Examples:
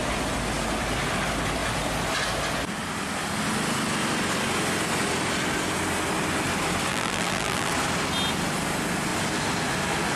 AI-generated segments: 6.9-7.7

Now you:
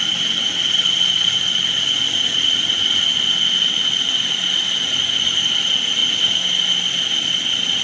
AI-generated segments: none

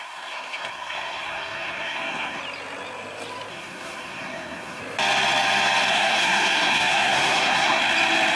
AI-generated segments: 0.0-2.4; 3.5-4.8; 5.9-7.8